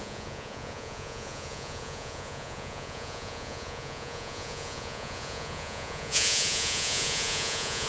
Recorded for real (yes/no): no